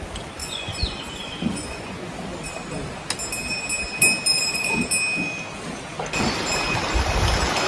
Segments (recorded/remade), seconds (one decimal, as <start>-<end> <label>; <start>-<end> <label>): 0.0-0.4 recorded; 0.4-2.1 remade; 2.1-4.3 recorded; 4.3-4.9 remade; 4.9-7.7 recorded